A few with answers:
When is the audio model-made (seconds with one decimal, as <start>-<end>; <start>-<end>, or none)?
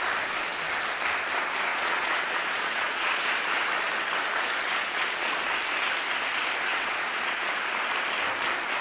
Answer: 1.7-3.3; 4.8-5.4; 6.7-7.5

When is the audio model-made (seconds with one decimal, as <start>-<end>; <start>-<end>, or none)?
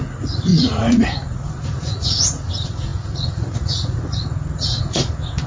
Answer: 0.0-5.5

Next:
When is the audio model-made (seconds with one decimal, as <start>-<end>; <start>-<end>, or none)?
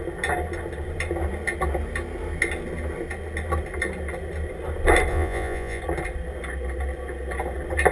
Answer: 5.1-5.8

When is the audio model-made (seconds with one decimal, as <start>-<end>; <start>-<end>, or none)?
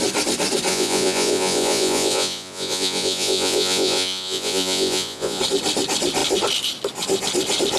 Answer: 0.7-5.4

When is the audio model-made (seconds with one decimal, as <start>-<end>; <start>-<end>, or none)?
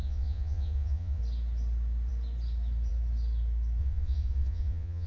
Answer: 0.0-1.2; 3.8-5.1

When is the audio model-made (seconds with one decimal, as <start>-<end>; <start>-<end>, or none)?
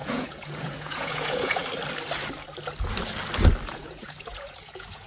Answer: 0.0-1.6; 3.7-5.1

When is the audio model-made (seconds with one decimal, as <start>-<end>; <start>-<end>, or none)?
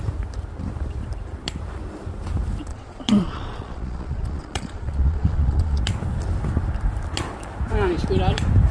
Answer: 2.7-5.8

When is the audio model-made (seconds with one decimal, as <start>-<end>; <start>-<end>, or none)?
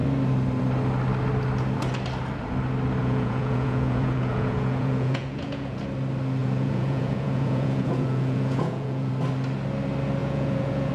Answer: 3.0-5.8; 6.4-9.1; 10.2-10.9